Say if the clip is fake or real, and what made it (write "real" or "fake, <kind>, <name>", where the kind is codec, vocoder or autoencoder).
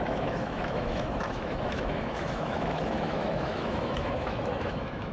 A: fake, autoencoder, DAC-VAE